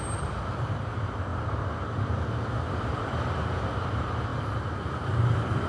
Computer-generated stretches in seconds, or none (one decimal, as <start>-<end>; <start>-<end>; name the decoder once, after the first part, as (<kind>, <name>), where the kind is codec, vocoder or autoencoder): 0.0-5.7 (vocoder, BigVGAN v2)